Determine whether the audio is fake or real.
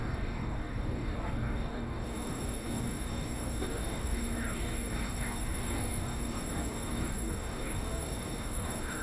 fake